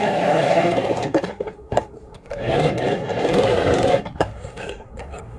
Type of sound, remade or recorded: remade